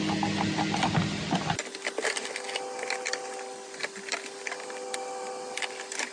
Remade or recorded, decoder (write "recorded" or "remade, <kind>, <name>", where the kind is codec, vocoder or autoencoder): recorded